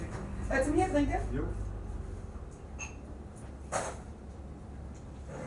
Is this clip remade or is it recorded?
recorded